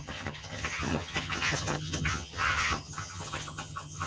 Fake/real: fake